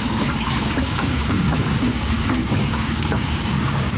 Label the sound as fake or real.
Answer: fake